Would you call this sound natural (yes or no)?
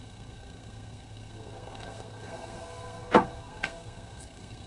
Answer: no